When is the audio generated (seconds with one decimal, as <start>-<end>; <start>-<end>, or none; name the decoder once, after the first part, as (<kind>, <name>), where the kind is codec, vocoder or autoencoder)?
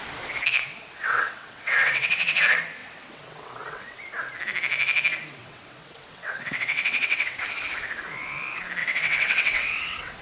0.7-2.4 (vocoder, WaveNeXt); 2.8-4.1; 5.4-7.4; 8.8-10.2